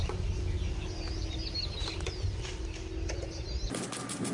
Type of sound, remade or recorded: recorded